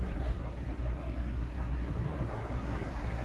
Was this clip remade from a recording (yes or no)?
yes